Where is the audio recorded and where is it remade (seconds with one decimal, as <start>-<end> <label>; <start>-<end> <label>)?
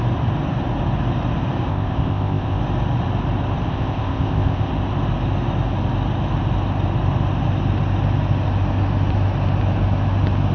0.0-1.7 recorded; 1.7-2.6 remade; 2.6-3.7 recorded; 3.7-4.7 remade; 4.7-10.5 recorded